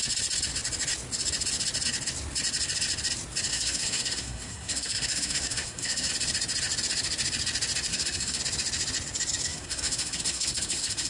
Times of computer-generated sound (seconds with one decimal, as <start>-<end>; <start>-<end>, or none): 3.5-6.1; 7.9-8.4; 9.5-11.1